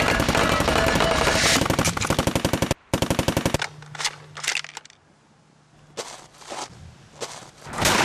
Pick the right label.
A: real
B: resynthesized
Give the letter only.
A